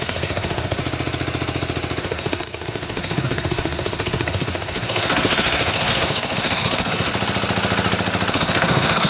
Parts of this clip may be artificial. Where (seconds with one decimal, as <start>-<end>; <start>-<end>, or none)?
0.0-0.8; 2.0-7.1; 8.3-9.1